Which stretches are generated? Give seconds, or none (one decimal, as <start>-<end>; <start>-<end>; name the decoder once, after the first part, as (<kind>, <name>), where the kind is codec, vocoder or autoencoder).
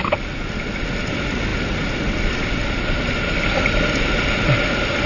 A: none